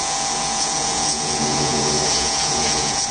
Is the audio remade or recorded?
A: remade